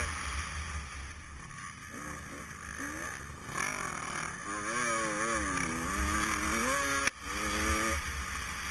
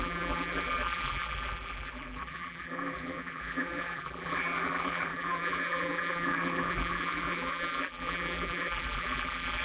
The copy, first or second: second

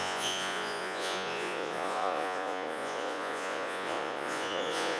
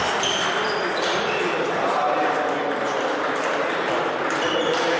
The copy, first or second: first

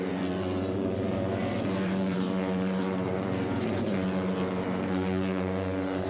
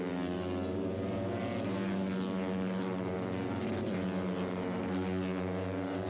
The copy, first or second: first